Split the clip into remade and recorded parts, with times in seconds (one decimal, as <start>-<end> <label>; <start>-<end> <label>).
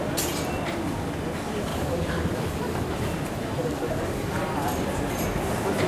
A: 0.0-1.7 recorded; 1.7-2.9 remade; 2.9-3.6 recorded; 3.6-4.4 remade; 4.4-5.9 recorded